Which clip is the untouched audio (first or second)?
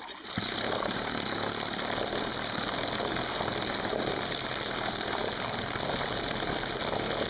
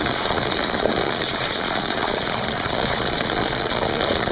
first